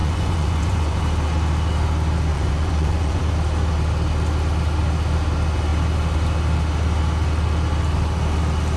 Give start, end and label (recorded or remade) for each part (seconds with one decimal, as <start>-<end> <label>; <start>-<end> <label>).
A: 0.0-1.0 remade; 1.0-2.3 recorded; 2.3-3.2 remade; 3.2-8.8 recorded

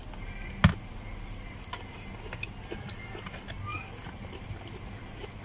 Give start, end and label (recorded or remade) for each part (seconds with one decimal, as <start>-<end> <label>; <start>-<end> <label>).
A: 0.0-5.4 recorded

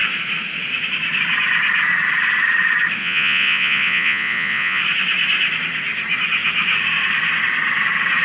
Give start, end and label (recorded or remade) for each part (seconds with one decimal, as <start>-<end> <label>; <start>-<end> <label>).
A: 0.0-3.0 recorded; 3.0-4.8 remade; 4.8-8.2 recorded

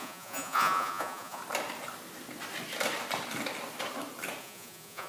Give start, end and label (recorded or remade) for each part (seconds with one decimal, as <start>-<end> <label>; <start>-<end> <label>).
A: 0.0-1.4 remade; 1.4-4.4 recorded; 4.4-5.1 remade

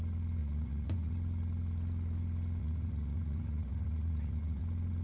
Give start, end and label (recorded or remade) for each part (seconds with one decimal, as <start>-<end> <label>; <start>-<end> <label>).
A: 0.0-0.4 recorded; 0.4-1.1 remade; 1.1-2.6 recorded; 2.6-4.6 remade; 4.6-5.0 recorded

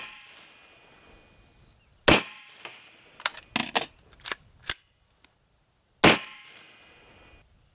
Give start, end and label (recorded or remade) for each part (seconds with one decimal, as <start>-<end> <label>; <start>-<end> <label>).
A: 0.0-7.7 recorded

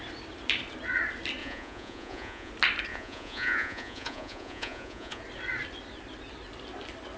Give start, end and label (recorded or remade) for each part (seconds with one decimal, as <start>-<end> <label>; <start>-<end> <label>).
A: 0.0-1.4 recorded; 1.4-2.5 remade; 2.5-2.9 recorded; 2.9-5.2 remade; 5.2-7.2 recorded

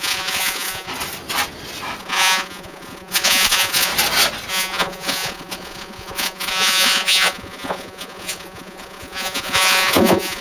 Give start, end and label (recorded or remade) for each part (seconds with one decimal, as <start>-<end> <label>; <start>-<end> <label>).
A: 0.0-0.9 remade; 0.9-2.0 recorded; 2.0-3.9 remade; 3.9-4.5 recorded; 4.5-10.4 remade